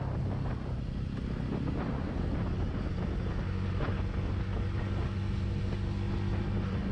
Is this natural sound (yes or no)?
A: yes